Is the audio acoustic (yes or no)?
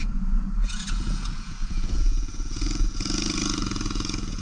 no